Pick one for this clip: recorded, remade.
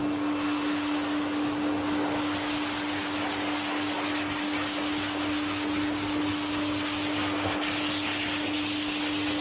recorded